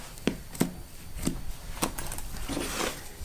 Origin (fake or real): real